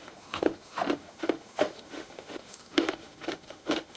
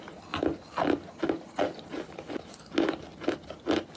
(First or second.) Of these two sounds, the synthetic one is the first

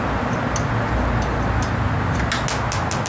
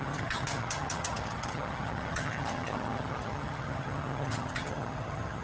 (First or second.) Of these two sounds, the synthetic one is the second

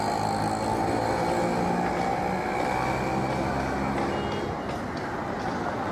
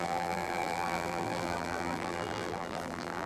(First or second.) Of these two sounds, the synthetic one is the second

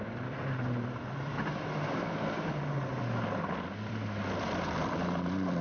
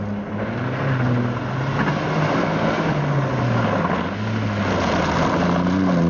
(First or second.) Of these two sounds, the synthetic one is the first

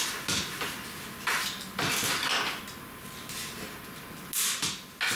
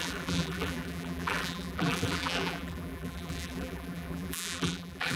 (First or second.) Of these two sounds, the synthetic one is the second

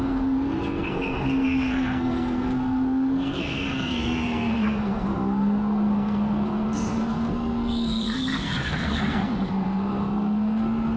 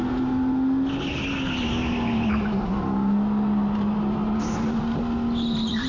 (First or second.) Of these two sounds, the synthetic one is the first